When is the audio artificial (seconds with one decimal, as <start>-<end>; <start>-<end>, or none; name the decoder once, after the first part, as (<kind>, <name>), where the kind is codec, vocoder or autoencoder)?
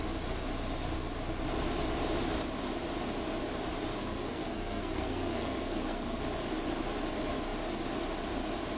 3.9-6.2 (codec, SNAC)